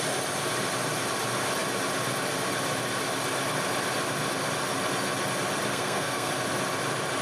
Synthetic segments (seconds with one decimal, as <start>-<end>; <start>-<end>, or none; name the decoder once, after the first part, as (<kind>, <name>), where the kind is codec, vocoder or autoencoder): 5.7-6.3 (codec, SNAC)